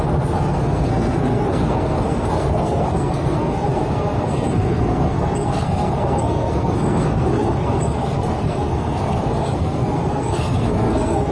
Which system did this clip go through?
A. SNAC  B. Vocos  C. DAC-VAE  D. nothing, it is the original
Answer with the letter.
A